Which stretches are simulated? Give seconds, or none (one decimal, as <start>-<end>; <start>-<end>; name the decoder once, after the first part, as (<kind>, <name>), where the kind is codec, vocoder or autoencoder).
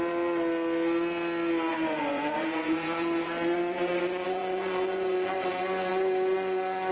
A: 1.7-5.5 (vocoder, Vocos); 5.9-6.9